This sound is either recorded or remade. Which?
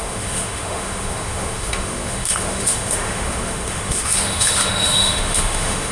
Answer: remade